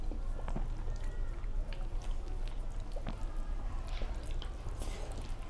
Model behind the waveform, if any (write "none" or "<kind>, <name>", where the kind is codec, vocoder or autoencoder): none